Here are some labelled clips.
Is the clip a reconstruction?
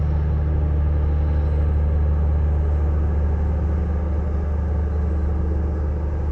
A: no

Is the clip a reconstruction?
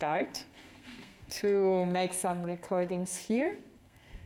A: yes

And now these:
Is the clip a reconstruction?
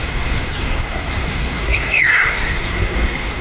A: yes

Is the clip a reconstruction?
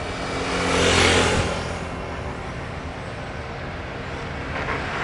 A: no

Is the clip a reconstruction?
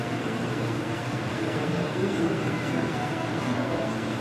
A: yes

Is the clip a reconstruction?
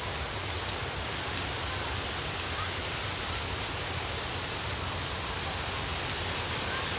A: no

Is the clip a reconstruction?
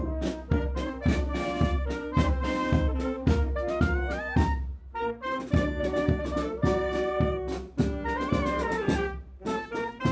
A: no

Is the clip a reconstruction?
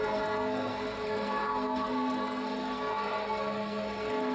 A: yes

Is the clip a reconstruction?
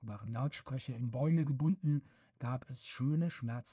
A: yes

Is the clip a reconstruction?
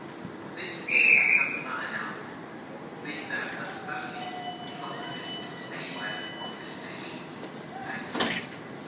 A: no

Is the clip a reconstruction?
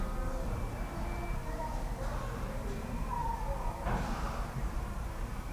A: no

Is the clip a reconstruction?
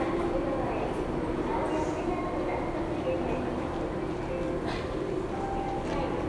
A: no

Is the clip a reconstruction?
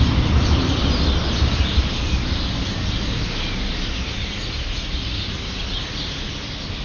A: no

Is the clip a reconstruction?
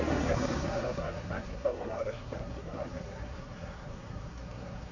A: yes